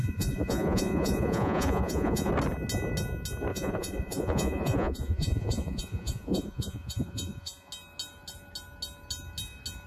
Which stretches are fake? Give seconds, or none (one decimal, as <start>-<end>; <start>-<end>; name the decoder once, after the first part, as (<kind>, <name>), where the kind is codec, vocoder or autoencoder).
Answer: 0.0-2.3 (vocoder, Vocos); 3.5-7.7

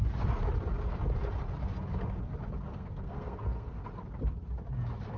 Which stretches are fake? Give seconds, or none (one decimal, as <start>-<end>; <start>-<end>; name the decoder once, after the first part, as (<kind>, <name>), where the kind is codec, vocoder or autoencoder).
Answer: 2.7-3.8 (codec, SNAC)

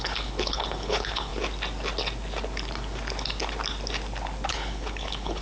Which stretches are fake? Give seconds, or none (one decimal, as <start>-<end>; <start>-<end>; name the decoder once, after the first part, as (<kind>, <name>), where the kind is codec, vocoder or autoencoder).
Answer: 0.0-1.3 (codec, HILCodec); 4.5-5.4

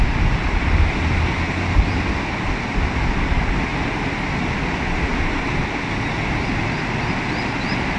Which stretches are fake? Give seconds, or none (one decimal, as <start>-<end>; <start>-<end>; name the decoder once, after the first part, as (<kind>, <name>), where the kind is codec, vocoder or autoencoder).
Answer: none

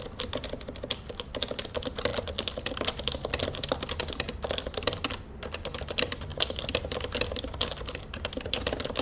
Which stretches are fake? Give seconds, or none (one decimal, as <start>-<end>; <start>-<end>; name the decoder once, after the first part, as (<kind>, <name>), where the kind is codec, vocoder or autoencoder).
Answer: none

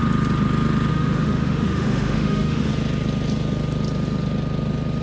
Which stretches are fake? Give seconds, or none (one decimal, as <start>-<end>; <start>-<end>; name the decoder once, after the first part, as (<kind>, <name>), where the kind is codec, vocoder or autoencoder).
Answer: 0.9-2.7 (autoencoder, DAC-VAE)